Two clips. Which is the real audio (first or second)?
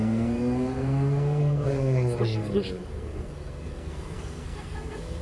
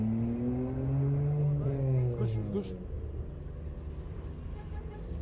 second